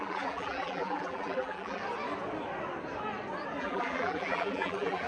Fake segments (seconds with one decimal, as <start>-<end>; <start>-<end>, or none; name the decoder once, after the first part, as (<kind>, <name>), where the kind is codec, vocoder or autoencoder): 0.0-1.8 (vocoder, BigVGAN v2); 3.6-5.1